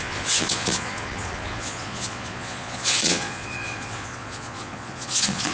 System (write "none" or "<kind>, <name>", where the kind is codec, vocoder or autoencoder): vocoder, Vocos